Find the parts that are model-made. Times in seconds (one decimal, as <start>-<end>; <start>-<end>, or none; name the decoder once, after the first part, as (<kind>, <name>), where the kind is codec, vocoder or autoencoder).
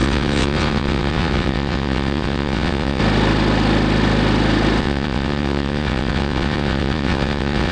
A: 0.0-3.0 (vocoder, WaveNeXt); 4.8-7.7